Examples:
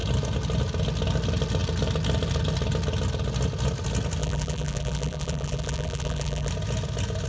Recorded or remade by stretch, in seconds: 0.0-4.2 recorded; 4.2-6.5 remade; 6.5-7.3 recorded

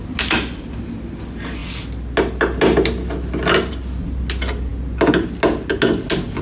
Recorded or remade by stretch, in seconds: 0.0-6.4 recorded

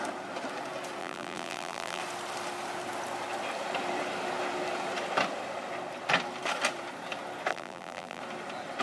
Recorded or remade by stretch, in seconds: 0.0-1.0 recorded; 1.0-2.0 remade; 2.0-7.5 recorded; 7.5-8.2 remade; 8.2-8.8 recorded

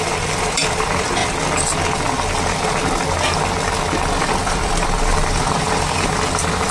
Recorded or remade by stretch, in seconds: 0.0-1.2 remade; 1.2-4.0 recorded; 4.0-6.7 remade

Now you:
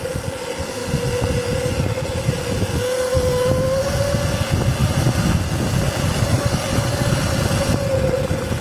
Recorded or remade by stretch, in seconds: 0.0-4.8 recorded; 4.8-5.4 remade; 5.4-8.6 recorded

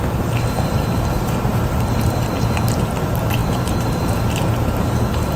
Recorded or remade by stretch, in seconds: 0.0-5.4 remade

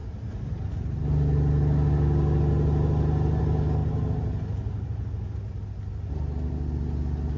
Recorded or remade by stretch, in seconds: 0.0-7.4 recorded

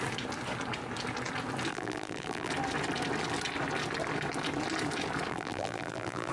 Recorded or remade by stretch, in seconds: 0.0-1.7 recorded; 1.7-2.5 remade; 2.5-5.3 recorded; 5.3-6.3 remade